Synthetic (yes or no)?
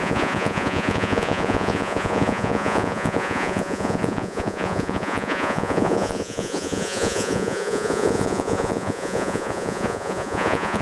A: yes